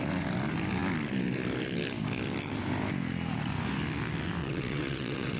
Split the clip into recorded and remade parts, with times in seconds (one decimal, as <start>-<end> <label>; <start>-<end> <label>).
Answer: 0.0-4.4 recorded; 4.4-5.4 remade